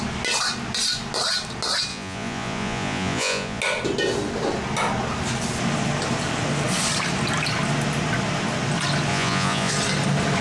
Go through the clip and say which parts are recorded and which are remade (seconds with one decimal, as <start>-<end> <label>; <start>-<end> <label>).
0.0-1.9 recorded; 1.9-3.6 remade; 3.6-9.1 recorded; 9.1-9.7 remade; 9.7-10.4 recorded